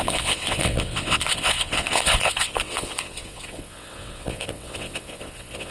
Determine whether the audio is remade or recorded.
remade